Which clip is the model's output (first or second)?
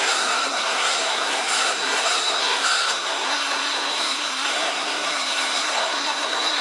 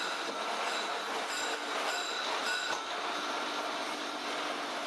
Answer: first